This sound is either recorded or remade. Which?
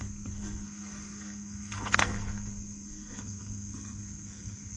remade